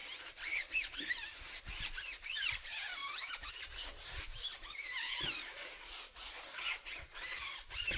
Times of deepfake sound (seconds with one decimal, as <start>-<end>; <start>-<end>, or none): 0.7-8.0